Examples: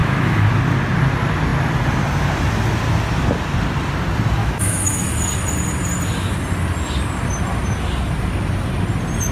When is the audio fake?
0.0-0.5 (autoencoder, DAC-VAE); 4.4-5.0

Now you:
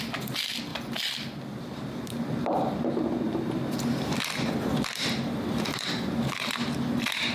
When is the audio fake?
0.7-4.1 (vocoder, BigVGAN v2); 4.7-6.5